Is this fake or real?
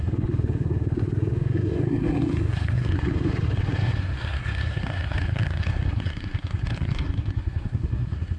fake